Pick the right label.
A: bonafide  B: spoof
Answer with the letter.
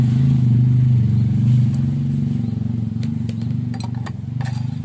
A